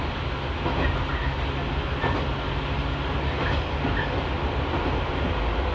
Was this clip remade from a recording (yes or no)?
no